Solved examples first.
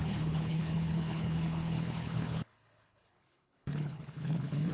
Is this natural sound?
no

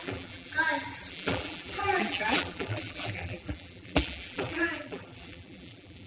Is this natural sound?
no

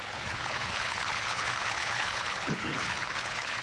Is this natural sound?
no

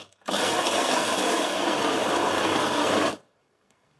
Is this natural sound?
no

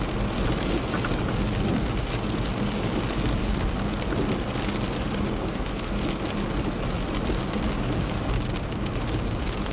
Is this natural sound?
yes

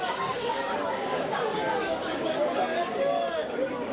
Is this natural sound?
no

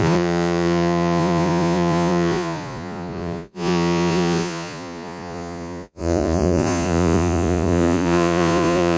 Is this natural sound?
no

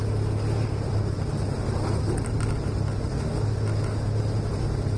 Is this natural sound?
yes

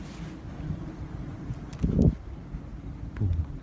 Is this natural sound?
yes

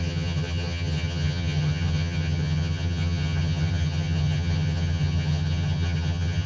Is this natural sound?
no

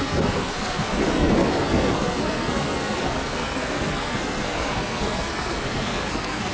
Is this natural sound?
no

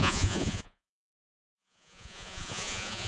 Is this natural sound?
no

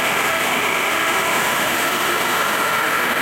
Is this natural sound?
no